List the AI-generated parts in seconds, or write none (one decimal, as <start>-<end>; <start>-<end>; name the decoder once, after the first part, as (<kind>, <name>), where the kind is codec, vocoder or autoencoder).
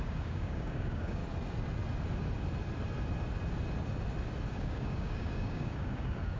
0.0-1.2 (codec, DAC); 4.5-6.4